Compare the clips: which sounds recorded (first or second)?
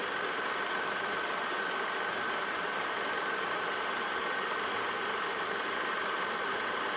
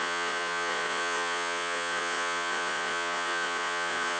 first